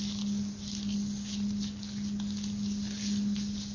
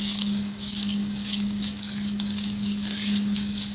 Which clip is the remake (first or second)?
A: second